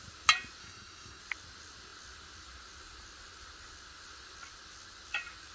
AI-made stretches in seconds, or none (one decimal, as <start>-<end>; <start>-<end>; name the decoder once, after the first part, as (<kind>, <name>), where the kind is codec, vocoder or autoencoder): 0.6-1.2 (codec, DAC)

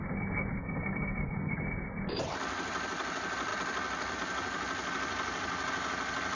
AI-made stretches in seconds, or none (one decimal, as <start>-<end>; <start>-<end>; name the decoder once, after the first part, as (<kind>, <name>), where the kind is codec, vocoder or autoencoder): 0.6-1.5 (codec, DAC)

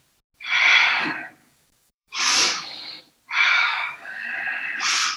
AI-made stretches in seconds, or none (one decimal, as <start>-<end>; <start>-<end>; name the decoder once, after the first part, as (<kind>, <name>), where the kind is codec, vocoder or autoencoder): 1.4-3.0 (codec, DAC); 3.5-4.3

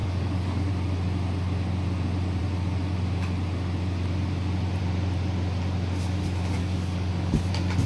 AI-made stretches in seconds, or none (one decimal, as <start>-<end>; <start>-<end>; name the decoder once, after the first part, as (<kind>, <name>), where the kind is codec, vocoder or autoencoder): 0.0-0.7 (codec, DAC); 6.6-7.5

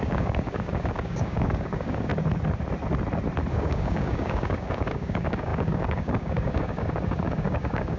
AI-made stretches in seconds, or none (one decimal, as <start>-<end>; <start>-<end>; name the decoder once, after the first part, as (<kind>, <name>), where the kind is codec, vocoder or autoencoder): 0.0-2.1 (codec, DAC); 3.5-8.0

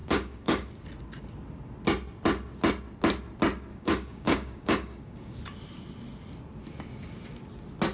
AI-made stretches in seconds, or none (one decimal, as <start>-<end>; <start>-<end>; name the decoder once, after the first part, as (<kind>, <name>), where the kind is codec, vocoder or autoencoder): 0.0-0.7 (codec, DAC); 3.7-5.4

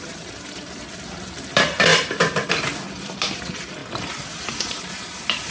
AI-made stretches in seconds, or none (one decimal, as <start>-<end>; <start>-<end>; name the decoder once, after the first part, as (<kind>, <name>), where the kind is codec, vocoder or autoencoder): none